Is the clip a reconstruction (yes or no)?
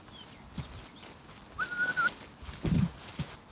no